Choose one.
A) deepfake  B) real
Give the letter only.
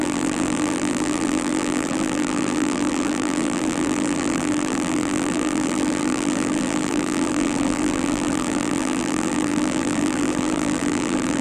A